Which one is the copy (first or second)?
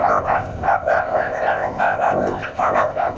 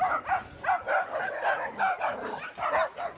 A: first